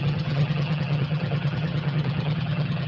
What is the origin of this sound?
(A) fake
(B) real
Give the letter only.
A